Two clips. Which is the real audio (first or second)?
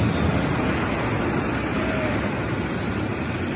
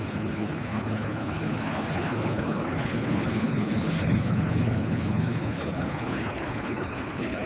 first